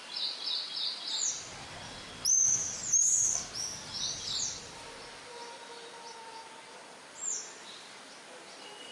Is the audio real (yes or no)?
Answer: yes